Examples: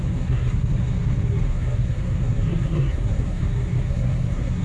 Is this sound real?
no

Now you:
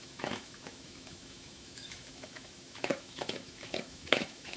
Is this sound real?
no